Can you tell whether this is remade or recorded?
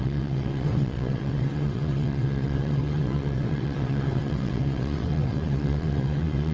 remade